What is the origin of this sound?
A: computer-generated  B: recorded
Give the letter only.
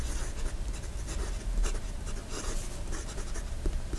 B